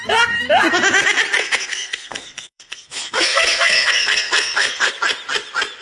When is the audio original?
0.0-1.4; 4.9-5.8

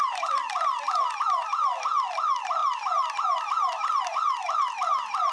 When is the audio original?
0.0-5.3

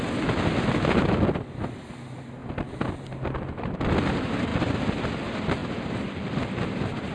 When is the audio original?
0.0-7.1

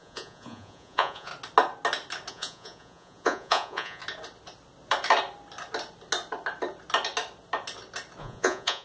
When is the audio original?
1.3-2.3; 4.0-8.2

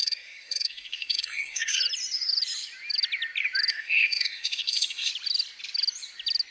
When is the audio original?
1.8-3.7; 5.1-6.5